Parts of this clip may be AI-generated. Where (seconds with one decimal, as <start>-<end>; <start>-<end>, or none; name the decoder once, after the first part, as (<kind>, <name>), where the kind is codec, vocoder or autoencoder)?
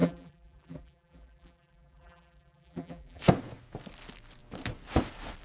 0.0-3.2 (vocoder, BigVGAN v2)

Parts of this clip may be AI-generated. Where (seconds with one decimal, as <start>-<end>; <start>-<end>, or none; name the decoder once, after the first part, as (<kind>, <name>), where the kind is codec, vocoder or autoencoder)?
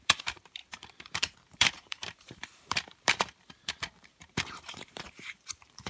0.0-5.9 (vocoder, BigVGAN v2)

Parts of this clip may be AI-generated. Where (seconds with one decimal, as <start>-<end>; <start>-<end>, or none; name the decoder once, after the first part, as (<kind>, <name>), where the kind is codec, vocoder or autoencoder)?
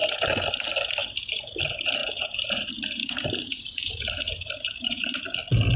0.0-0.5 (vocoder, BigVGAN v2); 1.0-1.6; 2.0-5.2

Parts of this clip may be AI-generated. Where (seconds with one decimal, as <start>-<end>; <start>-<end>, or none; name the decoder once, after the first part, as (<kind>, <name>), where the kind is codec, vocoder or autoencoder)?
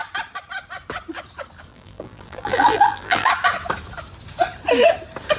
1.7-3.3 (vocoder, BigVGAN v2)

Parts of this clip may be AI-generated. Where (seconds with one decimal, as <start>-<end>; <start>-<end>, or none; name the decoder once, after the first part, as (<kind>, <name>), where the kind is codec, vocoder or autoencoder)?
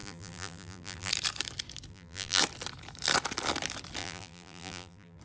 0.0-1.1 (vocoder, BigVGAN v2); 1.9-2.4; 4.0-5.2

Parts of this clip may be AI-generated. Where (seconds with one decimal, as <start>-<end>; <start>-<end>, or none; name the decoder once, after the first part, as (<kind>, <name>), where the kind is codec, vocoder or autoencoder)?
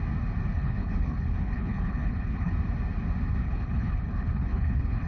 0.5-2.5 (codec, HILCodec); 3.4-5.1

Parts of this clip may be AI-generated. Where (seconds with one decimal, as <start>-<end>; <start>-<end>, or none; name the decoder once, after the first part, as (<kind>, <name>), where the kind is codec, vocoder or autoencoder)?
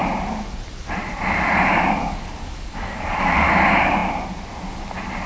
2.0-3.5 (codec, DAC)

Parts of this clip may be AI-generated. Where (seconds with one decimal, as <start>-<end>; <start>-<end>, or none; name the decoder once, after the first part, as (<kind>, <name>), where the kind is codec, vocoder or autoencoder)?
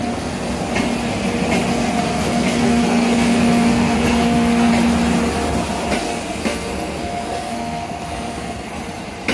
0.0-0.7 (codec, SNAC); 1.7-4.7; 6.0-8.7